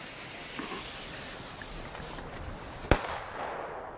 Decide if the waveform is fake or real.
real